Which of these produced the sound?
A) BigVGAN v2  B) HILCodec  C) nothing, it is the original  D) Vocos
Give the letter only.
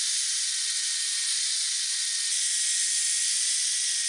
C